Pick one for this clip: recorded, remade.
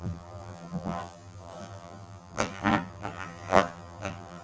remade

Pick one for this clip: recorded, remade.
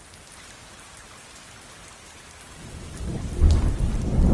recorded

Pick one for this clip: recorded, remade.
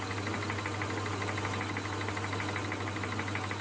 recorded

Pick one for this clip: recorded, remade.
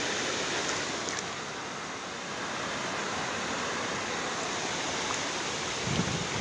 recorded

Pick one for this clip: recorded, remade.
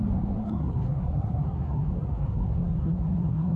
remade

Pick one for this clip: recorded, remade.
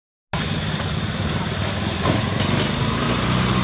recorded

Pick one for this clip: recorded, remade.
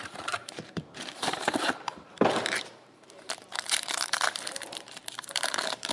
remade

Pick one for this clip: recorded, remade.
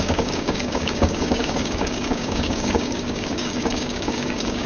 remade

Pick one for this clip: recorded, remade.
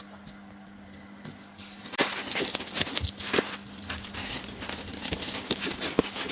recorded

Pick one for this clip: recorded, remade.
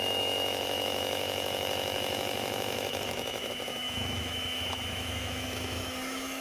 remade